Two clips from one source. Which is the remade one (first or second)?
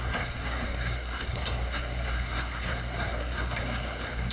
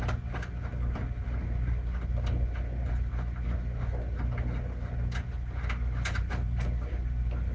first